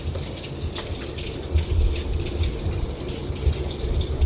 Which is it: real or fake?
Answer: real